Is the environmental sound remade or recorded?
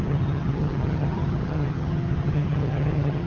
remade